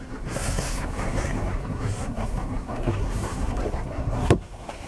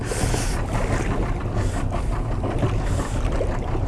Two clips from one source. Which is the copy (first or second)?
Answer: first